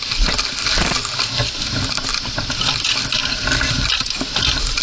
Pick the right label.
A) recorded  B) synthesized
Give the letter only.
A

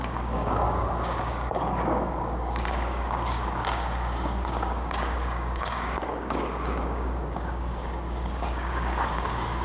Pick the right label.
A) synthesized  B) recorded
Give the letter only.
A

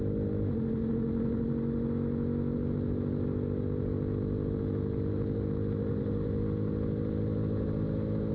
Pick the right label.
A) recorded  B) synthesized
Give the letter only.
A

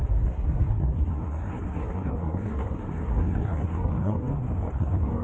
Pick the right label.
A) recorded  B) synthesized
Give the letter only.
B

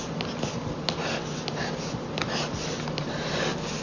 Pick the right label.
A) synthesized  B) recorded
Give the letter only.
B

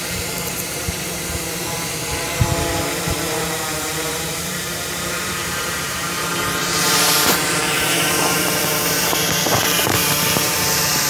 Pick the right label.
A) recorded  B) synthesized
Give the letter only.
B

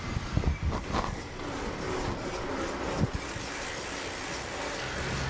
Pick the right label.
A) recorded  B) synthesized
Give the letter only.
A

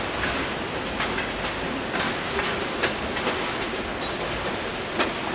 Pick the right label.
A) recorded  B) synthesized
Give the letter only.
A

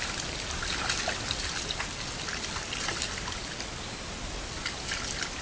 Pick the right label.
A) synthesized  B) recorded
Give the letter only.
B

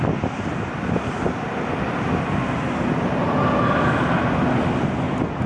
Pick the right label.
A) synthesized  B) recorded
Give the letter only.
B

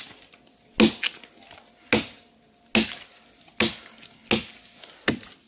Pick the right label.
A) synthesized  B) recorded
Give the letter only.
B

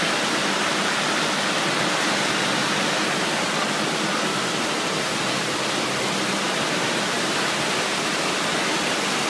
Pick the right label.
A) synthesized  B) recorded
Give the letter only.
B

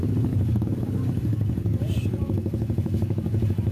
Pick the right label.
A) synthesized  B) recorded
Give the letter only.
A